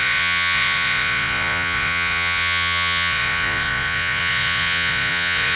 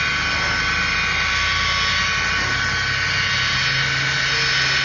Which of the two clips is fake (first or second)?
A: first